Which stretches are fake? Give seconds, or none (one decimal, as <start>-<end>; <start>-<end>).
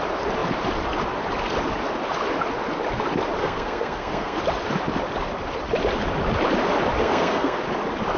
3.4-4.4; 7.0-7.6